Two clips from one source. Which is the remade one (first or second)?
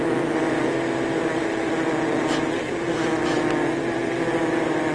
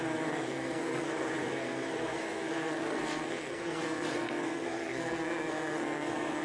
second